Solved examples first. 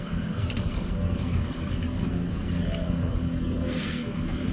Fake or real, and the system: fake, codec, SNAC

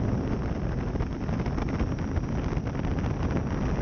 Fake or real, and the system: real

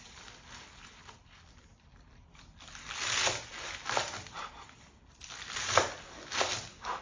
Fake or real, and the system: real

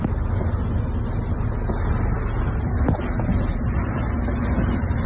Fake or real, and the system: real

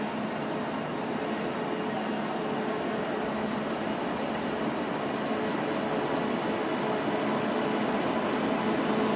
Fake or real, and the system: real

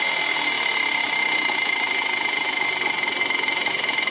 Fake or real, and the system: real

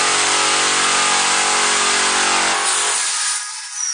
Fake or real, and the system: real